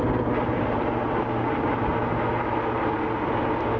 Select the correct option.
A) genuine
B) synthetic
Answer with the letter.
A